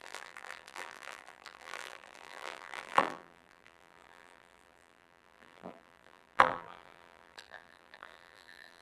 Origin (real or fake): fake